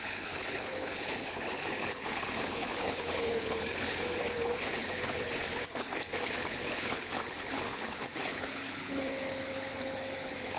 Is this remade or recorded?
remade